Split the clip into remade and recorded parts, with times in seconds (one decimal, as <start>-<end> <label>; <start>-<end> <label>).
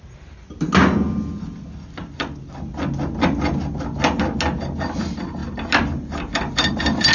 0.0-7.1 recorded